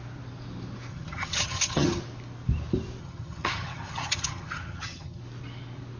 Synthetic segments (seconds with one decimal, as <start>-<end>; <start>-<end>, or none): 0.9-2.0; 3.0-5.2